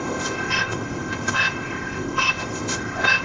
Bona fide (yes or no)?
no